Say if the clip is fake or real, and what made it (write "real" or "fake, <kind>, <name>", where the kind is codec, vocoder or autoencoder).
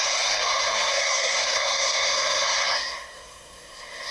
fake, codec, SNAC